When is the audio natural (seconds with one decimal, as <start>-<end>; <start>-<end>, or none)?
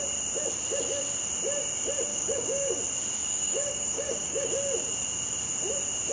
0.0-2.1; 2.8-3.2; 4.5-6.1